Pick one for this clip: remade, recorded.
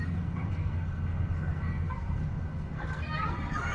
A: remade